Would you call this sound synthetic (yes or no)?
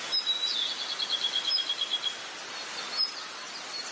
no